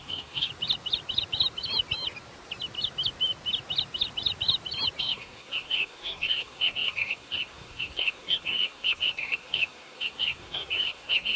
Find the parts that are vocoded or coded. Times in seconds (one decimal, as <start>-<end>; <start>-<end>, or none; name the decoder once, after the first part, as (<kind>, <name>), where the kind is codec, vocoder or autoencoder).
0.0-0.5 (codec, SNAC); 5.0-11.4